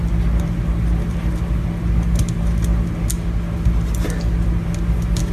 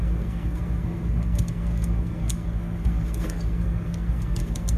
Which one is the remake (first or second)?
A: second